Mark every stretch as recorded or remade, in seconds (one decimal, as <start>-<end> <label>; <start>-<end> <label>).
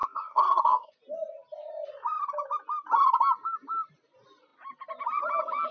0.0-0.9 remade; 0.9-5.7 recorded